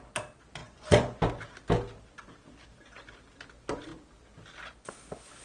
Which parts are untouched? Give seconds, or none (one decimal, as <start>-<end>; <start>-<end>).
0.0-0.6; 1.2-5.4